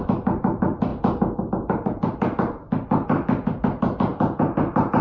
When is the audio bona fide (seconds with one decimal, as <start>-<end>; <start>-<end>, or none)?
0.0-5.0